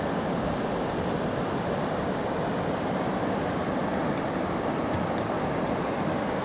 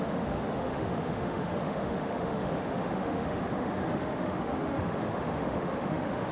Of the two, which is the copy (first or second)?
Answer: second